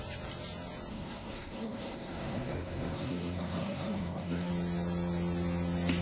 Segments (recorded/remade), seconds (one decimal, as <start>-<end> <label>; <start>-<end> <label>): 0.0-0.9 recorded; 0.9-4.5 remade; 4.5-6.0 recorded